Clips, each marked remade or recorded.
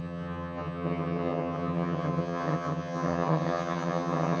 remade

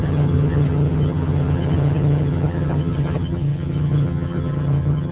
remade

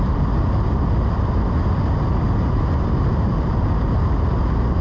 recorded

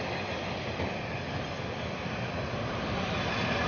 recorded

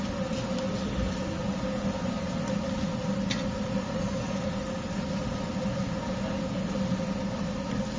recorded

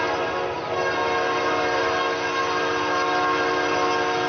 recorded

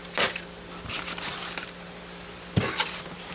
recorded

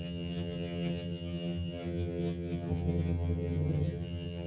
remade